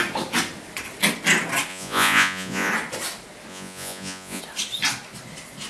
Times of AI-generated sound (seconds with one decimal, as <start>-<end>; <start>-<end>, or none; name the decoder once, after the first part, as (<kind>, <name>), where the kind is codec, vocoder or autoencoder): 1.7-2.7 (vocoder, Vocos); 3.5-4.4